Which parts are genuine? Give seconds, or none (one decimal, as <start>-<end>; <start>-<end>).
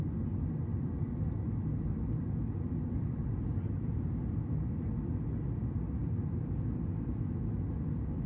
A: 0.0-0.7; 5.5-6.0; 7.5-8.3